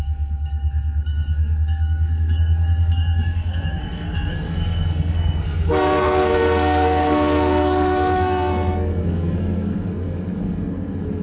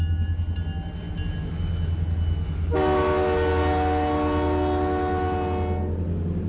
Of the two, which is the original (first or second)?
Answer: second